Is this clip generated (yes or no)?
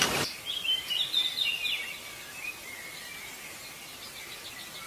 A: no